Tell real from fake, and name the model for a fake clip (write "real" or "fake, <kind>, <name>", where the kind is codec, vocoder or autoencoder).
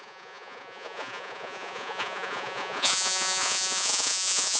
fake, vocoder, Vocos